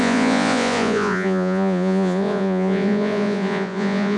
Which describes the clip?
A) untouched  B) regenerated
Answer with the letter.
B